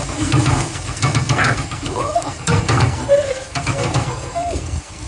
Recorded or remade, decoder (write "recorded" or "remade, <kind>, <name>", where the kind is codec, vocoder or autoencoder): remade, codec, SNAC